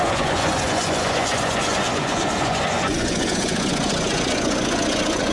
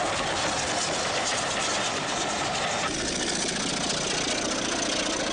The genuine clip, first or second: second